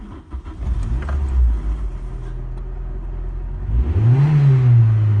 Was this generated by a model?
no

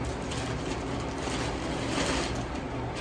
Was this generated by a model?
no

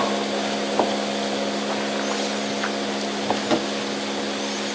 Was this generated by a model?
no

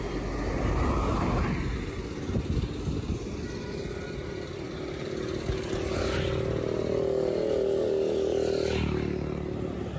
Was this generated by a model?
no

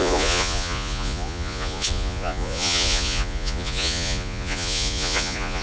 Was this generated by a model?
yes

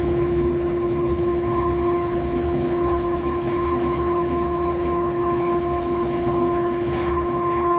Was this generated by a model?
yes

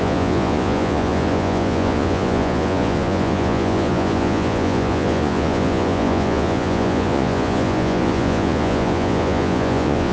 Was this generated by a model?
yes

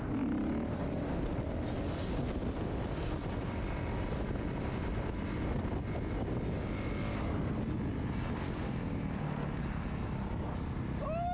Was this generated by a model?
no